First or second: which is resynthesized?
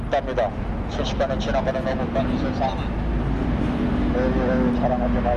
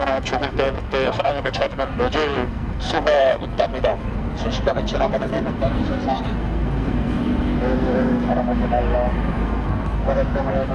second